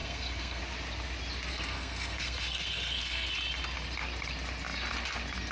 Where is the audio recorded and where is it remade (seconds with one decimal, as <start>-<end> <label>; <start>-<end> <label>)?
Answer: 0.0-0.6 remade; 0.6-1.5 recorded; 1.5-3.3 remade; 3.3-5.5 recorded